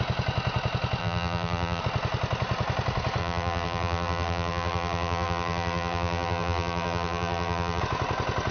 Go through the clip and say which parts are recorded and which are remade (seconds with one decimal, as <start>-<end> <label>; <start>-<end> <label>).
0.0-1.0 recorded; 1.0-1.8 remade; 1.8-3.2 recorded; 3.2-7.8 remade; 7.8-8.5 recorded